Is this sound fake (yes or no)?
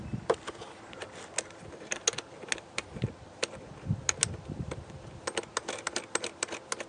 no